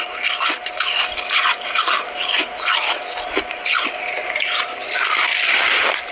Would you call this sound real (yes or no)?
yes